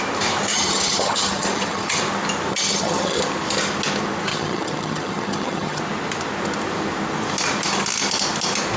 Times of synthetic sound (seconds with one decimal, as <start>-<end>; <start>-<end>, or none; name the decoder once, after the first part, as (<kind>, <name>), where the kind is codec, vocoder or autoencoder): 0.5-2.0 (vocoder, HiFi-GAN); 2.5-3.2; 4.3-5.8